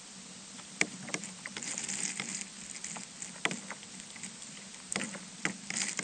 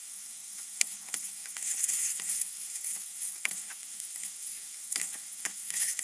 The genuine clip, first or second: first